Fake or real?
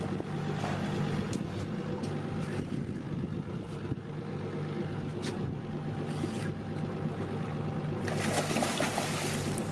real